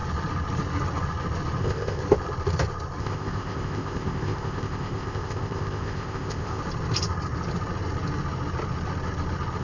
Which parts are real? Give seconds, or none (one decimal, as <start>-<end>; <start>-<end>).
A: 0.0-1.6; 2.0-3.0; 6.6-9.6